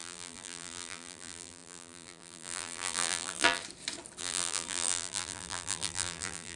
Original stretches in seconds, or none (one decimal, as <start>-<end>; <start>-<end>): 3.6-4.2